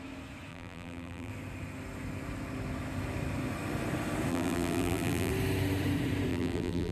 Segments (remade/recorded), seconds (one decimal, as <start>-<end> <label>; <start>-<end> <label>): 0.0-0.5 recorded; 0.5-1.3 remade; 1.3-4.3 recorded; 4.3-5.3 remade; 5.3-6.3 recorded; 6.3-6.9 remade